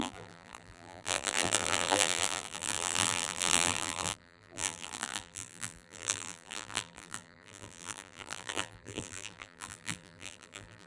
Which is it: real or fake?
fake